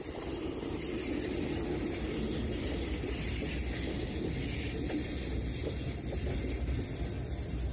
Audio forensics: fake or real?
real